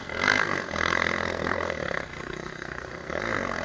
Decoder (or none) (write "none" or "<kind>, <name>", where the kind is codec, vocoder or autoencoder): codec, SNAC